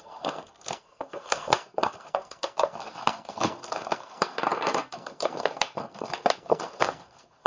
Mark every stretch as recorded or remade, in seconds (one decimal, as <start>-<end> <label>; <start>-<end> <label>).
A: 0.0-7.5 remade